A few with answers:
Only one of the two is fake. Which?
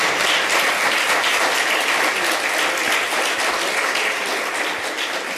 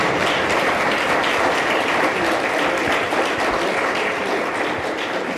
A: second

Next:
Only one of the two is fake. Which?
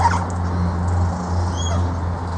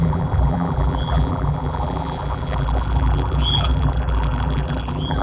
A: second